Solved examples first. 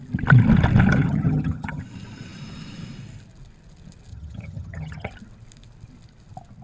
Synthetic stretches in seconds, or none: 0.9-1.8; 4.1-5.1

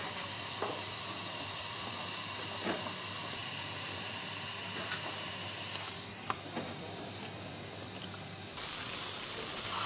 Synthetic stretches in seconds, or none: 0.0-3.4; 5.9-9.9

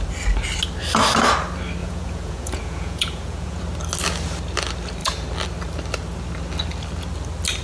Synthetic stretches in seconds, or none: 1.8-3.6